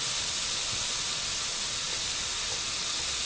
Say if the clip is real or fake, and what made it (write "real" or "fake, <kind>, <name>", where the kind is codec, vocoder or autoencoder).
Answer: real